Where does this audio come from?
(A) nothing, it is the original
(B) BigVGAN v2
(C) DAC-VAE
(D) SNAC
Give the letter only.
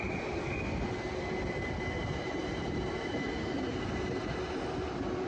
A